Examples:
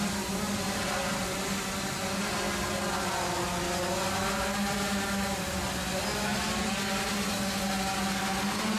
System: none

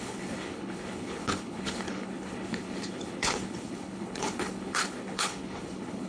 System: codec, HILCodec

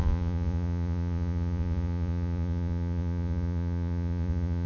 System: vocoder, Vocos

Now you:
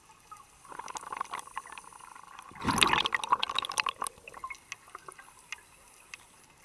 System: none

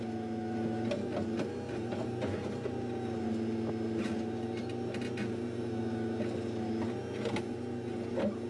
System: none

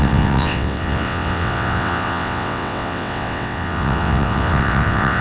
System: vocoder, WaveNeXt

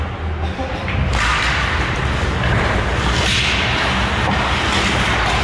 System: none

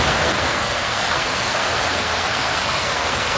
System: codec, SNAC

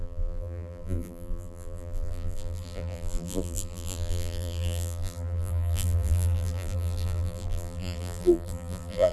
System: vocoder, BigVGAN v2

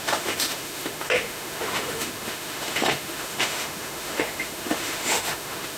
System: autoencoder, DAC-VAE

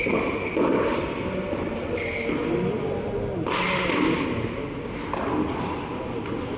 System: none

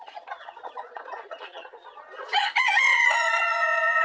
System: vocoder, Vocos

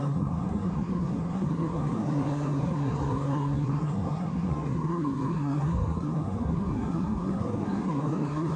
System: codec, SNAC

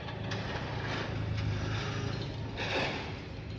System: none